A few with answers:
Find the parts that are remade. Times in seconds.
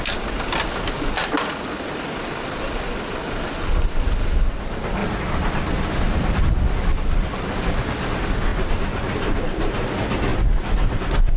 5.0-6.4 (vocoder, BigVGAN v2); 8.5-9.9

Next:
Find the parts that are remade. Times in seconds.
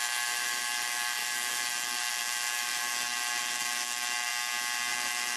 0.0-4.3 (autoencoder, DAC-VAE); 4.9-5.4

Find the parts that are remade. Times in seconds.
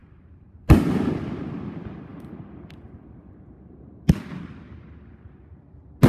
0.0-1.3 (vocoder, BigVGAN v2); 2.1-4.3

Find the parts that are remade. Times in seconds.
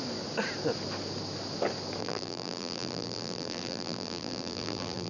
2.0-5.1 (vocoder, BigVGAN v2)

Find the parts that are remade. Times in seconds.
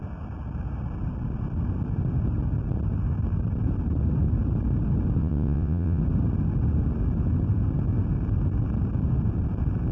5.2-6.0 (vocoder, WaveNeXt)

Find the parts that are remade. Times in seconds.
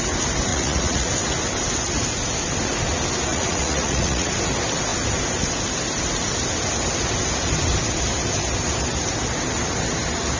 0.5-1.1 (vocoder, Vocos); 3.3-4.3